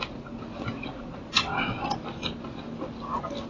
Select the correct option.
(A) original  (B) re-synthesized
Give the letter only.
A